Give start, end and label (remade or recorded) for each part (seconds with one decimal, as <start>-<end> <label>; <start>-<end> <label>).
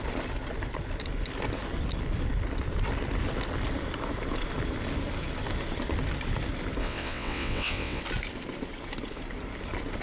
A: 0.0-6.8 recorded; 6.8-8.0 remade; 8.0-10.0 recorded